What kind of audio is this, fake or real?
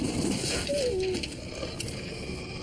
real